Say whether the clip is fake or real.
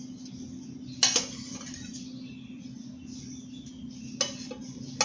real